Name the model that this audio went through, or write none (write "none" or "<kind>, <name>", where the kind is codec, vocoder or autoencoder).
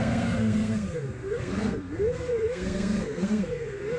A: codec, SNAC